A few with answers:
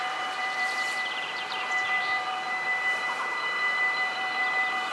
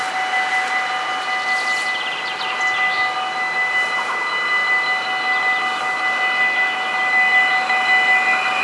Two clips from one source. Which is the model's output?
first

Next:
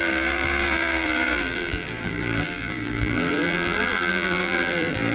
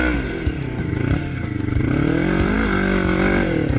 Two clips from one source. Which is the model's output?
first